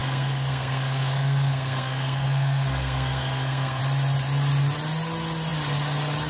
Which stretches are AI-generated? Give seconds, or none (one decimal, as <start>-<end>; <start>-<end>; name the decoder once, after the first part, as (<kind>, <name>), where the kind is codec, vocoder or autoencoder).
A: 0.0-3.8 (codec, SNAC)